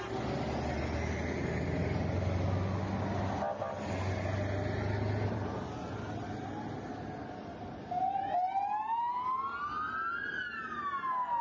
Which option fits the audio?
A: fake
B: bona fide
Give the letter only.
B